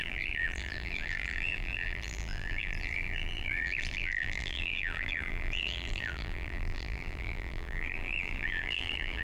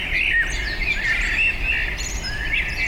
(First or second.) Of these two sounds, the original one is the second